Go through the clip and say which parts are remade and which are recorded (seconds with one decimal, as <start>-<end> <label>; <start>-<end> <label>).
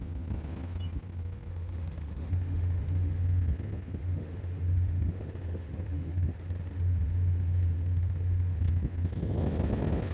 0.0-1.5 recorded; 1.5-3.2 remade; 3.2-4.0 recorded; 4.0-8.6 remade; 8.6-10.1 recorded